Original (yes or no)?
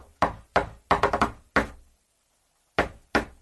yes